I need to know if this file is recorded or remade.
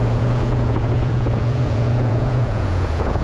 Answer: remade